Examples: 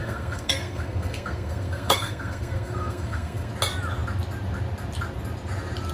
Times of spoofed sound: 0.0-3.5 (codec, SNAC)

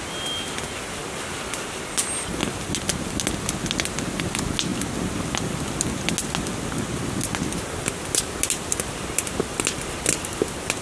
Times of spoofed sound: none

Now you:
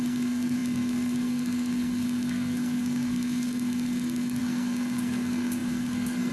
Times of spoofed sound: 0.0-6.3 (codec, SNAC)